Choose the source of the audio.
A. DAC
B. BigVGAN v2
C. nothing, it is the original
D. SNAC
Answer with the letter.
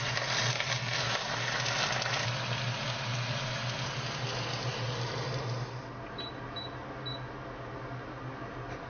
C